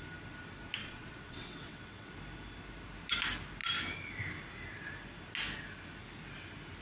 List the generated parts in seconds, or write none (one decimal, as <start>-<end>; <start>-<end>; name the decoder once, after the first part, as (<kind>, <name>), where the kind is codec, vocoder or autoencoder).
0.8-2.1 (vocoder, WaveNeXt)